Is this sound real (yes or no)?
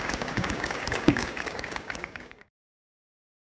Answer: no